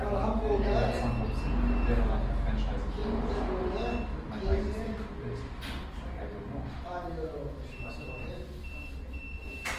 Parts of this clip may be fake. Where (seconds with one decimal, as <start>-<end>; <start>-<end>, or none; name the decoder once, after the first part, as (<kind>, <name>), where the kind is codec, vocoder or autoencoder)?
none